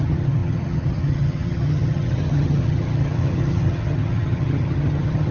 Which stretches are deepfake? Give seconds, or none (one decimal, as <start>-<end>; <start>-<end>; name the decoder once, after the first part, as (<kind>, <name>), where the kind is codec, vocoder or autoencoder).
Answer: 0.0-5.3 (vocoder, HiFi-GAN)